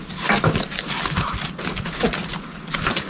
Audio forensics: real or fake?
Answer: real